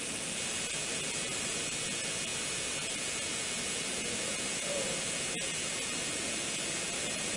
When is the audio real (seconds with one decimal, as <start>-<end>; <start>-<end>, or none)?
0.0-7.4